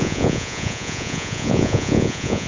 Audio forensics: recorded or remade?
remade